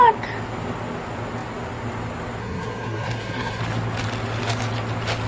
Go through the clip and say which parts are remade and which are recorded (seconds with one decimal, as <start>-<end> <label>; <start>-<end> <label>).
0.0-2.4 recorded; 2.4-3.6 remade; 3.6-5.3 recorded